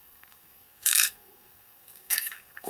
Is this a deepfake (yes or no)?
yes